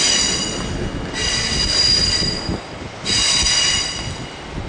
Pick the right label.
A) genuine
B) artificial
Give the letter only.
A